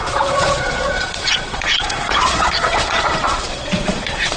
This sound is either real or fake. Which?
fake